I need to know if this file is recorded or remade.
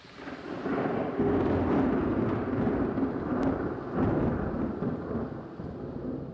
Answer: recorded